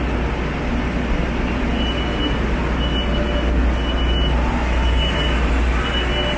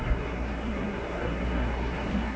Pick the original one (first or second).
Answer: first